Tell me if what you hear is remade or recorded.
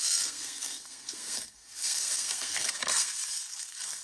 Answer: remade